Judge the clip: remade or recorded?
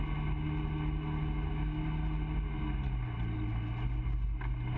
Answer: recorded